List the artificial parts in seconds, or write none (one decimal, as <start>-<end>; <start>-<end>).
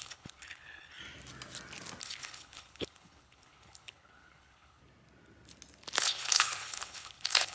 0.0-1.0; 2.0-4.8; 6.0-7.5